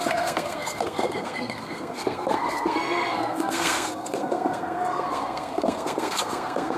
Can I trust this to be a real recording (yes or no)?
no